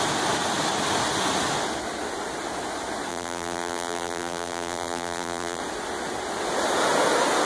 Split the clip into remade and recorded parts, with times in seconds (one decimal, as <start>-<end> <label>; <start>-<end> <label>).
0.0-3.1 recorded; 3.1-5.6 remade; 5.6-7.5 recorded